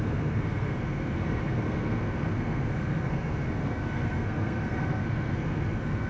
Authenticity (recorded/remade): remade